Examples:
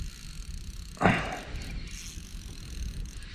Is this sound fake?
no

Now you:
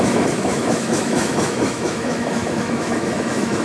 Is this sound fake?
yes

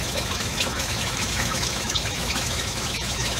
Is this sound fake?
yes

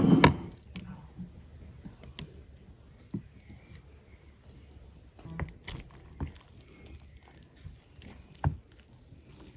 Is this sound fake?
no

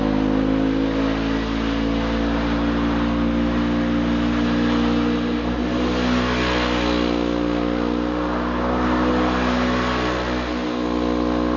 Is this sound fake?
no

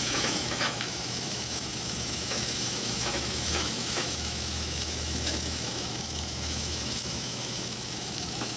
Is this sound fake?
yes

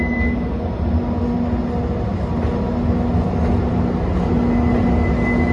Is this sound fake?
no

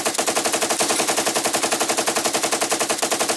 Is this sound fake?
no